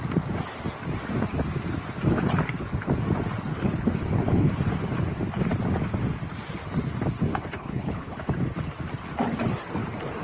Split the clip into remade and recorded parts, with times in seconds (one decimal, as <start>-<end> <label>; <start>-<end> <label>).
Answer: 0.0-3.5 recorded; 3.5-4.5 remade; 4.5-7.3 recorded; 7.3-8.2 remade; 8.2-10.2 recorded